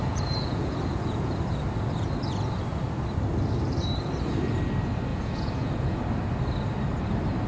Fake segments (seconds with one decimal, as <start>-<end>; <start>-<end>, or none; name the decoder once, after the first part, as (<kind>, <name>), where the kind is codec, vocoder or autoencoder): 0.0-1.4 (vocoder, Vocos); 5.1-6.0